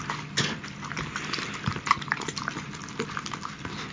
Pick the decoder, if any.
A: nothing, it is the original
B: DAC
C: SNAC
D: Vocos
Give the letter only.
A